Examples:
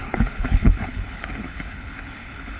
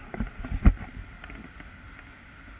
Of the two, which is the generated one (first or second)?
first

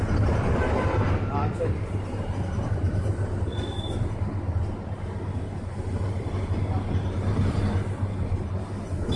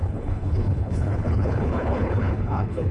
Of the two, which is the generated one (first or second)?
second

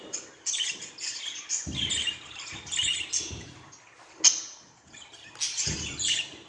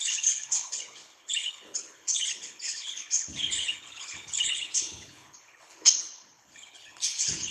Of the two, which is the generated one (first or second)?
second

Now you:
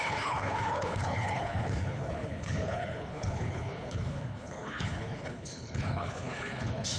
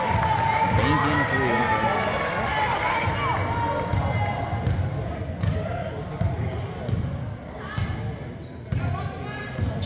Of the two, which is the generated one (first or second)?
first